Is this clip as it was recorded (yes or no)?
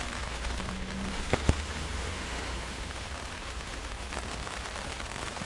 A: no